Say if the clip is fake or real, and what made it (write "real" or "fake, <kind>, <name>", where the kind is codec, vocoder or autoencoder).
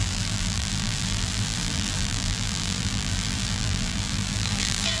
fake, vocoder, BigVGAN v2